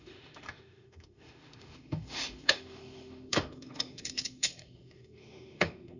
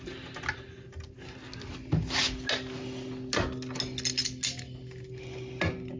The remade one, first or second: first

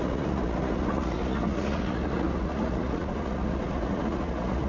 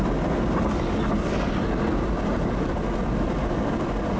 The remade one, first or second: first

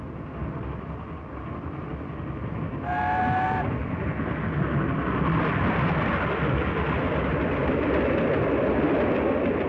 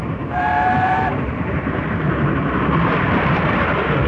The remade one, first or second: second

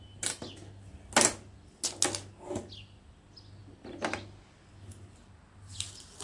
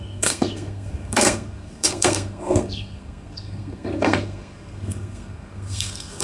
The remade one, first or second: second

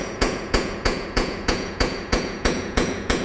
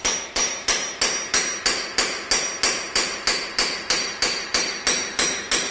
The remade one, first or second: first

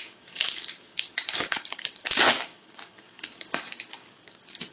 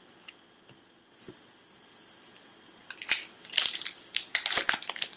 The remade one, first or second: first